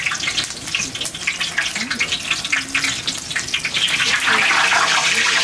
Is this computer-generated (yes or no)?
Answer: no